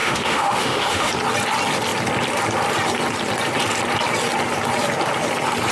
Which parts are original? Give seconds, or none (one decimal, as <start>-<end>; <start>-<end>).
1.1-5.7